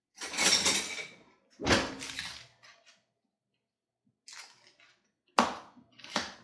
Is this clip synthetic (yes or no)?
no